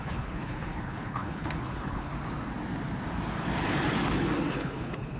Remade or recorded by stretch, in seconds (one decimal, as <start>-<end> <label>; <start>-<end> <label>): 0.0-2.1 remade; 2.1-4.5 recorded; 4.5-5.2 remade

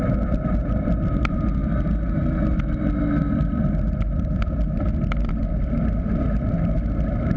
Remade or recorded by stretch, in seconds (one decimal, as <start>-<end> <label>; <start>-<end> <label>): 0.0-7.4 recorded

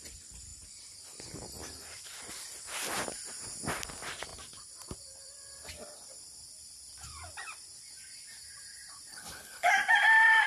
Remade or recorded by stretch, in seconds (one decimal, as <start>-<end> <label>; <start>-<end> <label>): 0.0-9.1 recorded; 9.1-9.7 remade; 9.7-10.5 recorded

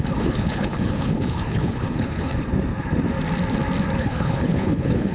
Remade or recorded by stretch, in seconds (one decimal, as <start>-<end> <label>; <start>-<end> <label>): 0.0-2.3 remade; 2.3-4.0 recorded; 4.0-5.1 remade

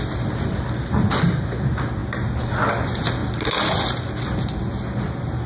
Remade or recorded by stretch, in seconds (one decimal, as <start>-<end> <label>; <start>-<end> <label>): 0.0-5.5 recorded

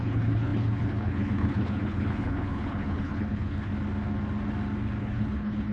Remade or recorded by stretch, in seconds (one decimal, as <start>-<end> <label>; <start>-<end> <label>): 0.0-3.7 remade; 3.7-5.0 recorded; 5.0-5.7 remade

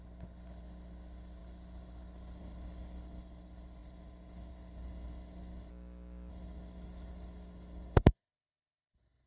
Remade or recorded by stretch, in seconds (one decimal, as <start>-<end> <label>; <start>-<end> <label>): 0.0-5.7 remade; 5.7-6.3 recorded; 6.3-9.3 remade